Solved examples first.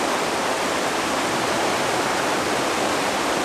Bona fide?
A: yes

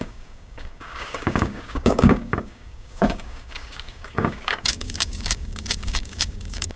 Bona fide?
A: no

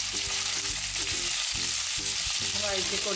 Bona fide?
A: yes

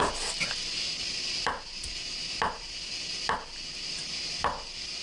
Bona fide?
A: yes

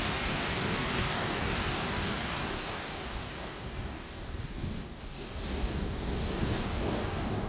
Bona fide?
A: no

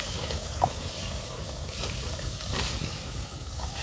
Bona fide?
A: no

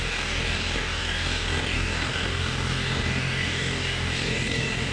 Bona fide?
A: no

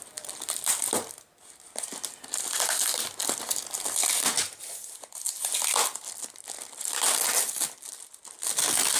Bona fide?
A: yes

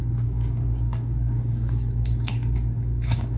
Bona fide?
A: no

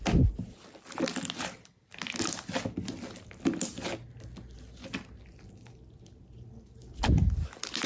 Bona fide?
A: yes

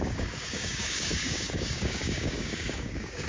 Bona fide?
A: no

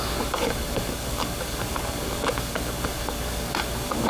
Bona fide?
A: no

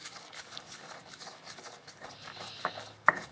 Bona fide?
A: no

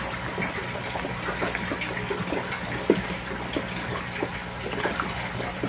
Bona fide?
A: yes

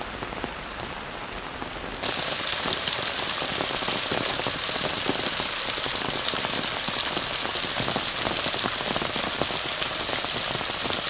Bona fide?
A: yes